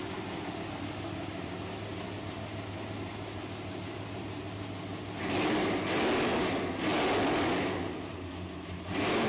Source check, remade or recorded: recorded